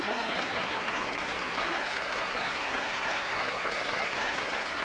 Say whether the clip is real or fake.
fake